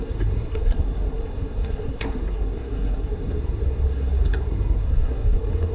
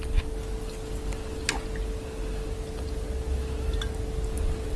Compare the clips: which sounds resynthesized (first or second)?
first